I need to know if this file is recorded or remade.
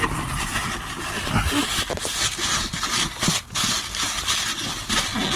recorded